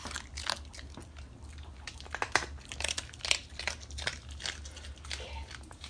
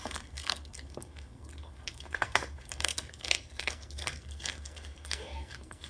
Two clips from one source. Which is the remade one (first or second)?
second